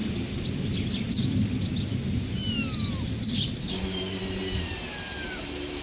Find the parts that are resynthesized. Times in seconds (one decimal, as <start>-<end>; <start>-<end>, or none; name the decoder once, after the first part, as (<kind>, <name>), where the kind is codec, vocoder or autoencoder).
none